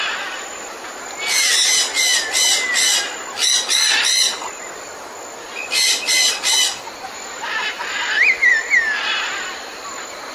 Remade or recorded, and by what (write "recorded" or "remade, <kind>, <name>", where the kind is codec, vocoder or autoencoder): recorded